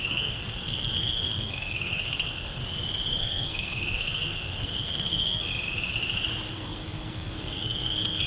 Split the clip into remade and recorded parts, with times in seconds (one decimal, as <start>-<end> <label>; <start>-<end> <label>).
0.0-2.6 remade; 2.6-3.2 recorded; 3.2-5.5 remade; 5.5-6.5 recorded; 6.5-8.3 remade